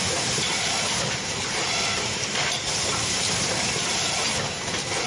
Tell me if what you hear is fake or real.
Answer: real